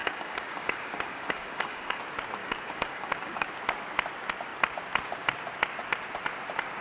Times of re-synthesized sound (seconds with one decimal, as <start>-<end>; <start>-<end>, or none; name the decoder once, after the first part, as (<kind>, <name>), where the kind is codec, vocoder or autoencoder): 0.0-2.0 (codec, DAC); 2.4-3.5